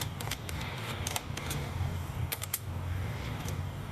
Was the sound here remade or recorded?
remade